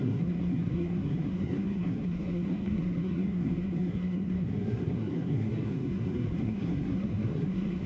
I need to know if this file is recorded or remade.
remade